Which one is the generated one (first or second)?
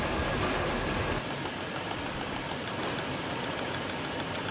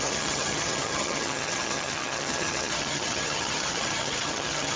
second